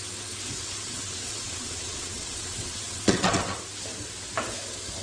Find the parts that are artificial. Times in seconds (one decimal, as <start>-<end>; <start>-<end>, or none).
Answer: 0.6-3.6